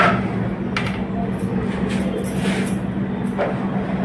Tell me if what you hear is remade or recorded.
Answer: recorded